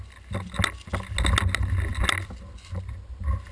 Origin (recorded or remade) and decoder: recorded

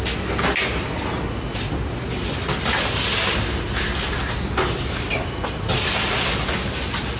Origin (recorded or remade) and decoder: recorded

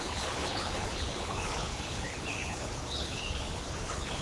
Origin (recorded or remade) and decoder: remade, codec, HILCodec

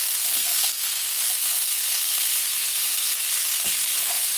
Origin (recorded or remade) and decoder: remade, codec, SNAC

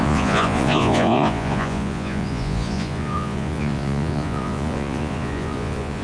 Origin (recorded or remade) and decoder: remade, vocoder, Vocos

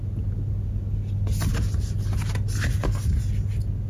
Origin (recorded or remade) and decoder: recorded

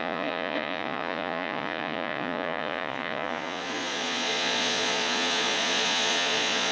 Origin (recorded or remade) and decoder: remade, vocoder, Vocos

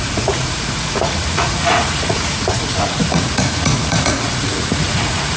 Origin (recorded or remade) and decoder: remade, vocoder, Vocos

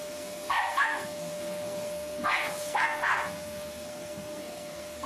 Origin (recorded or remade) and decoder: remade, codec, SNAC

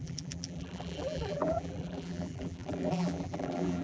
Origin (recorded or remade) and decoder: remade, vocoder, BigVGAN v2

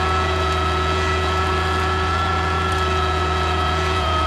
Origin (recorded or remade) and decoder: remade, vocoder, Vocos